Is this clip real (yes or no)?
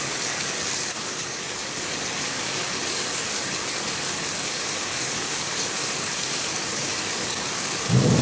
no